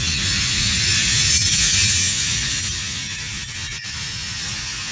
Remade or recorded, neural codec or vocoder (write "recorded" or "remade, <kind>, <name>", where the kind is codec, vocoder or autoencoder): remade, vocoder, Vocos